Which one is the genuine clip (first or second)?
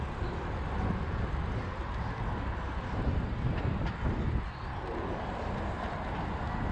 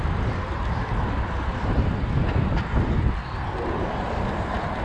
first